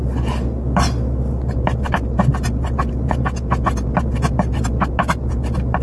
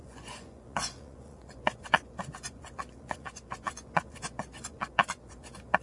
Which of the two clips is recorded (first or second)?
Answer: first